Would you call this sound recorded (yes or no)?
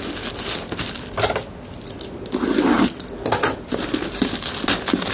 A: yes